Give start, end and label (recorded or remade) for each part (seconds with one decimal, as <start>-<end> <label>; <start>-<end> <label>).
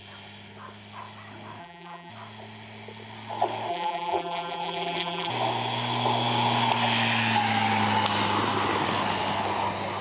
0.0-1.6 recorded; 1.6-2.1 remade; 2.1-3.7 recorded; 3.7-5.3 remade; 5.3-10.0 recorded